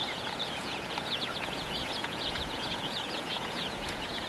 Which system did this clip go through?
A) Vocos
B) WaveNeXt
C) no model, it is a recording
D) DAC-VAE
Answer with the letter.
A